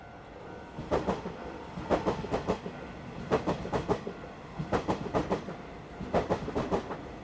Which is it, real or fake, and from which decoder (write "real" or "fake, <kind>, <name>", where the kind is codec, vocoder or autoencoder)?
fake, vocoder, BigVGAN v2